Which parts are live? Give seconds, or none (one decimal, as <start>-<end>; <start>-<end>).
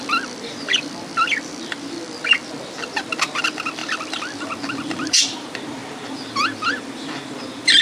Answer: none